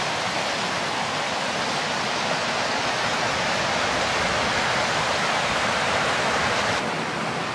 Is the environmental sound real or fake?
real